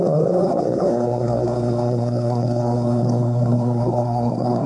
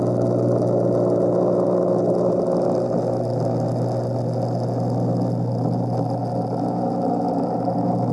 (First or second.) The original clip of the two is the second